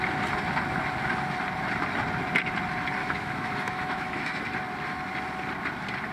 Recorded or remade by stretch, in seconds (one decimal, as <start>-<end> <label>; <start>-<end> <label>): 0.0-3.0 recorded; 3.0-4.4 remade; 4.4-6.1 recorded